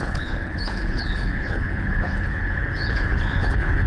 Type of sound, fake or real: fake